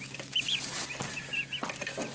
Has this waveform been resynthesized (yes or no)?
no